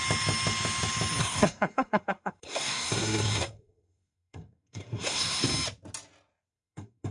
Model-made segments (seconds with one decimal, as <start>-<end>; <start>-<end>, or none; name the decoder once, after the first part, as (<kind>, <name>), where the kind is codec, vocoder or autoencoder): 1.2-5.5 (codec, SNAC); 6.5-7.1